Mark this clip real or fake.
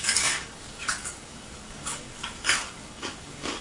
fake